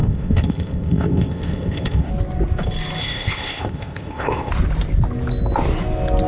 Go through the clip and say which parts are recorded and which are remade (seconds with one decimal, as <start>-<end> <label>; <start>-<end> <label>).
0.0-2.1 remade; 2.1-3.0 recorded; 3.0-4.5 remade; 4.5-6.3 recorded